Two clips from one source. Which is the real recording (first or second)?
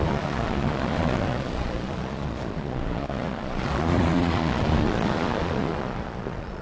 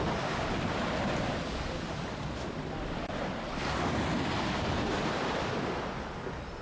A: second